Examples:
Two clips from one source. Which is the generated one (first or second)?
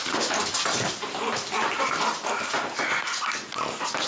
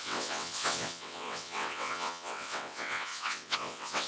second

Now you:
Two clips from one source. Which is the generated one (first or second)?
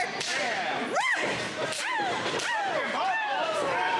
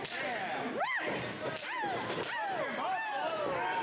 first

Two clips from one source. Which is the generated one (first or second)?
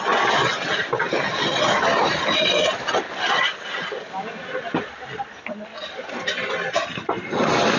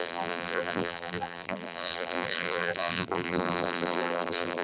second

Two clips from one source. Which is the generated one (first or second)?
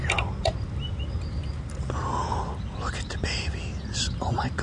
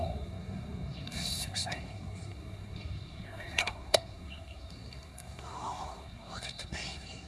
second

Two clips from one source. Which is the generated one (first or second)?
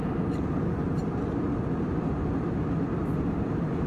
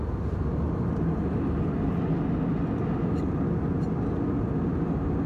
first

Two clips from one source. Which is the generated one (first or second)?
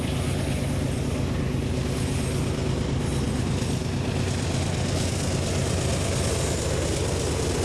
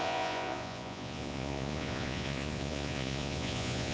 second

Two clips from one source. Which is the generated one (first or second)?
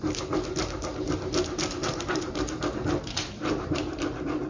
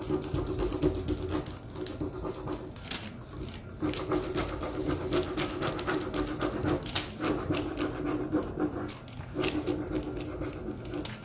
first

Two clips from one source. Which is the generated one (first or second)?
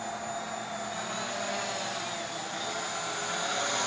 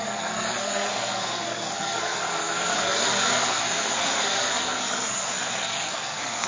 second